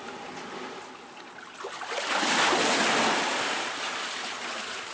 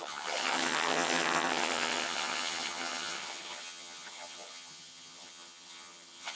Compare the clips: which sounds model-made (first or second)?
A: second